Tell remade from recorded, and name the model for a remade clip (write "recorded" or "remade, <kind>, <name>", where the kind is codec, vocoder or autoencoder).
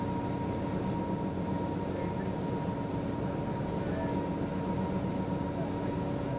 recorded